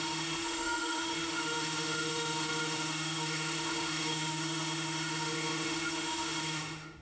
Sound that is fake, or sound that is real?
fake